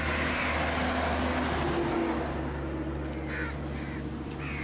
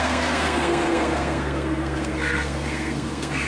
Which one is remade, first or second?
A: second